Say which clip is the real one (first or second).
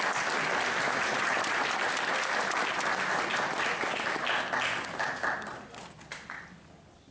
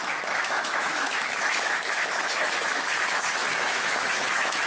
first